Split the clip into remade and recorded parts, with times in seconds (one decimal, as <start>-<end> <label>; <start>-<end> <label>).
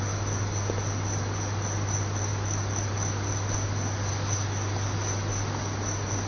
0.0-6.3 recorded